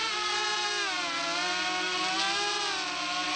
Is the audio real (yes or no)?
yes